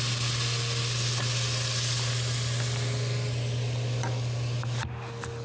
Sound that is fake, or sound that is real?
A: real